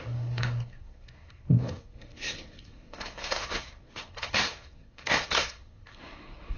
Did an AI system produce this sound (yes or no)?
yes